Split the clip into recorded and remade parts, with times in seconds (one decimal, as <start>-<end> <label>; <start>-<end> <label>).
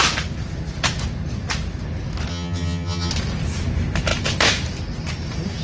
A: 0.0-2.3 recorded; 2.3-3.1 remade; 3.1-5.6 recorded